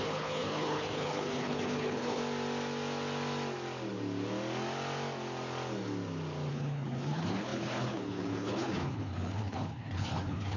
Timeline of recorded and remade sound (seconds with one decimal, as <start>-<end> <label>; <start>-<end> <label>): 0.0-2.2 remade; 2.2-6.5 recorded; 6.5-10.6 remade